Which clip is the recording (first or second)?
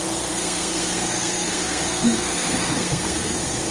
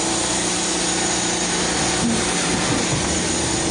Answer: second